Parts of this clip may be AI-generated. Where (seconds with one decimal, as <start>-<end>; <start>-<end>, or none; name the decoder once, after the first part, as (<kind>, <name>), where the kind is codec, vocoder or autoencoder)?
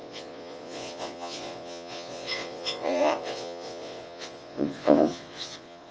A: 0.0-5.9 (vocoder, Vocos)